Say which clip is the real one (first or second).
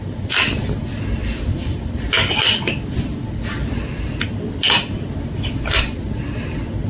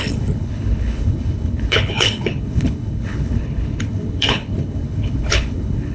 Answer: first